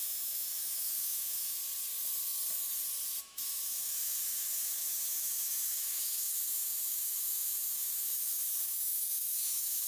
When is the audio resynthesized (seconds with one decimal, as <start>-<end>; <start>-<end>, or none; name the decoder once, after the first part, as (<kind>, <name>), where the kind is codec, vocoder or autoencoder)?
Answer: 0.0-1.6 (autoencoder, DAC-VAE); 3.2-9.9